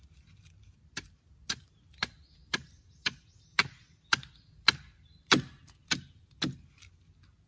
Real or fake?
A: real